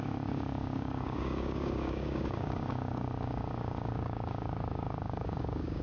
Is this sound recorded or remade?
remade